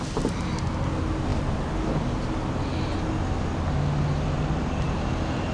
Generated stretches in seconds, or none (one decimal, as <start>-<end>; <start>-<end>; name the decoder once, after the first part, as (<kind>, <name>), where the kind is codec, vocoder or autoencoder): none